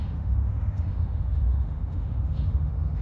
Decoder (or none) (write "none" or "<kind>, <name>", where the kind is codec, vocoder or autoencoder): autoencoder, DAC-VAE